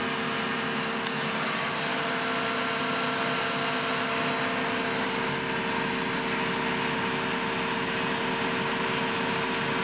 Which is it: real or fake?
real